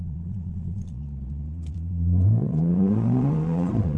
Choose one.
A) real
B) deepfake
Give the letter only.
B